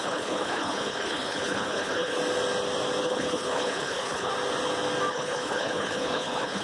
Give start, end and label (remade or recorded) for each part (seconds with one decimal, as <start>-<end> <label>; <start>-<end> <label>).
0.0-2.2 remade; 2.2-3.0 recorded; 3.0-4.3 remade; 4.3-5.1 recorded; 5.1-6.6 remade